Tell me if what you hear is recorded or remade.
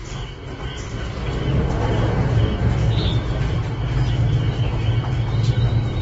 recorded